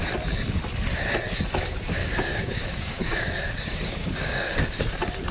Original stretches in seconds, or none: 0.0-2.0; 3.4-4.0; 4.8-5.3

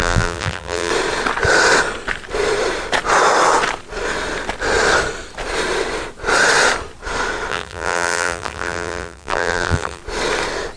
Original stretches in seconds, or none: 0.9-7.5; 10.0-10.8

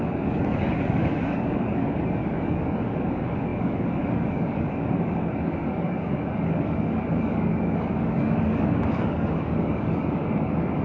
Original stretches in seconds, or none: none

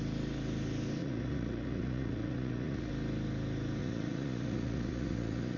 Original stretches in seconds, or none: 0.0-1.0; 2.9-3.8